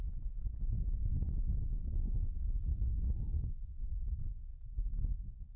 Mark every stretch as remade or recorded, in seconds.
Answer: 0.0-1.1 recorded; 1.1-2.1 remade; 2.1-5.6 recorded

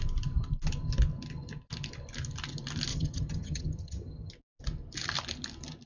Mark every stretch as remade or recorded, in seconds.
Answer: 0.0-2.9 recorded; 2.9-4.3 remade; 4.3-5.9 recorded

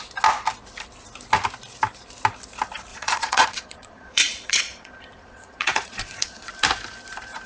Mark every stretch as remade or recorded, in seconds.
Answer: 0.0-2.9 recorded; 2.9-6.5 remade; 6.5-7.5 recorded

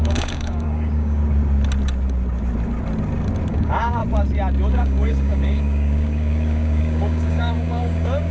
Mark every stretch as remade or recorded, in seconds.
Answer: 0.0-1.2 remade; 1.2-3.5 recorded; 3.5-4.0 remade; 4.0-4.7 recorded; 4.7-8.3 remade